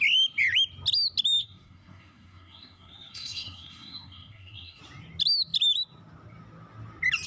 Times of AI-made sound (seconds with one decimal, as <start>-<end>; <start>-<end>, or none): 1.4-4.8